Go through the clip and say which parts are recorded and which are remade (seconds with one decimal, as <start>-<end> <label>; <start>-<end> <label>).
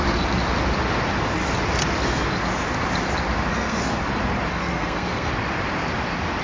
0.0-3.5 recorded; 3.5-4.0 remade; 4.0-4.5 recorded; 4.5-5.3 remade; 5.3-6.4 recorded